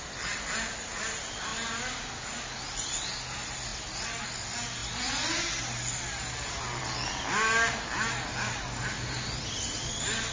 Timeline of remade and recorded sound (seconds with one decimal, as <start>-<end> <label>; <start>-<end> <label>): 0.0-10.3 recorded